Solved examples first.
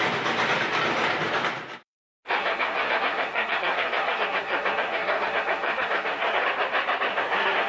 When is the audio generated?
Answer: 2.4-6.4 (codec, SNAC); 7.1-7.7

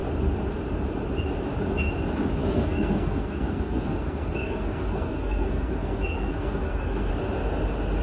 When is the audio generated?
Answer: 2.4-7.1 (codec, SNAC)

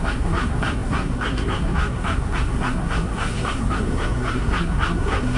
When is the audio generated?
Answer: 0.0-5.4 (codec, SNAC)

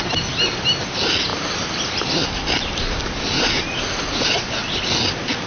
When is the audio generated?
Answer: none